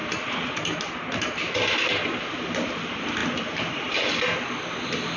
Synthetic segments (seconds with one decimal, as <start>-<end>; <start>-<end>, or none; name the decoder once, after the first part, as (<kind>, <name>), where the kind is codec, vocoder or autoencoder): none